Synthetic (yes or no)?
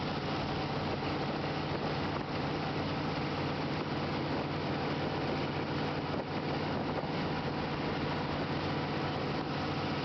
no